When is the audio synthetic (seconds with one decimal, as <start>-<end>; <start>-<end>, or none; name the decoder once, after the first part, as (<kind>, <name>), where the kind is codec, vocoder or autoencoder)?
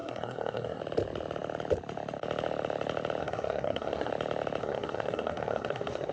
0.0-0.8 (codec, SNAC); 3.2-4.1; 4.6-6.1